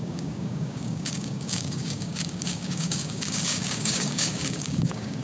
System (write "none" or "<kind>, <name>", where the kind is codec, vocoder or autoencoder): codec, DAC